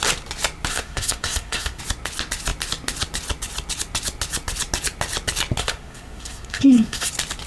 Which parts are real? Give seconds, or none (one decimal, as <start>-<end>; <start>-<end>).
0.0-0.7; 1.8-5.6; 7.1-7.5